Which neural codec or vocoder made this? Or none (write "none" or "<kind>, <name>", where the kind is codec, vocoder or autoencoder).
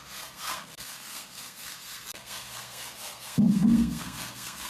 codec, SNAC